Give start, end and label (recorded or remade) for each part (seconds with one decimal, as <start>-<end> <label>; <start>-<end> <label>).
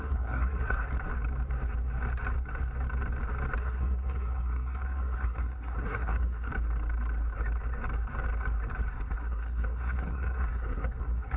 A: 0.0-0.9 remade; 0.9-3.6 recorded; 3.6-6.5 remade; 6.5-8.9 recorded; 8.9-11.4 remade